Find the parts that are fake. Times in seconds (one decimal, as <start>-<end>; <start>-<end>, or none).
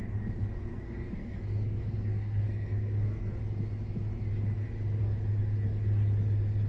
0.7-3.3